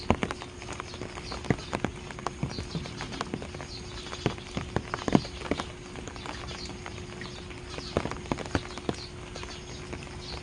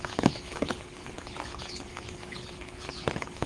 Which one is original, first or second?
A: first